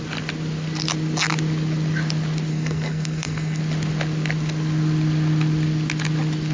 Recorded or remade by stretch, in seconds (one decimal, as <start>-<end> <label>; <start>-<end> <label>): 0.0-2.5 recorded; 2.5-3.6 remade; 3.6-6.5 recorded